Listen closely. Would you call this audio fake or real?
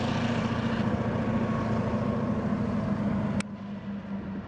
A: real